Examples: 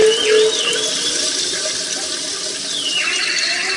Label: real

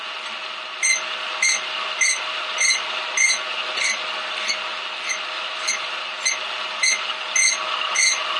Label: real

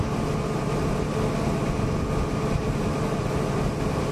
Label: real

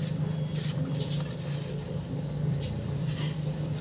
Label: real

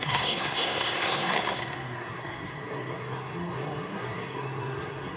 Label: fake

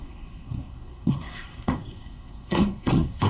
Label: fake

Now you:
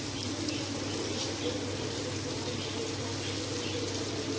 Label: real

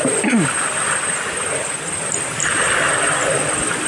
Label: real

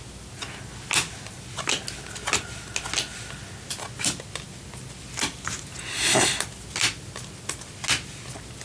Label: real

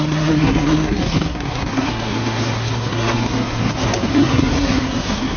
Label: fake